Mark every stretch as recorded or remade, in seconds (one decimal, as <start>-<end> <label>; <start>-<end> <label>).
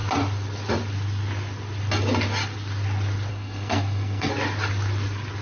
0.0-3.3 recorded; 3.3-4.3 remade; 4.3-5.4 recorded